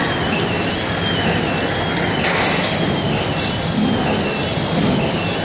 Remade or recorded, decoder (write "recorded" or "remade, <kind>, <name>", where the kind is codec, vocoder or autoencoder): recorded